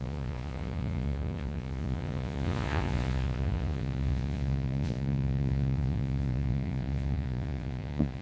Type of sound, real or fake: fake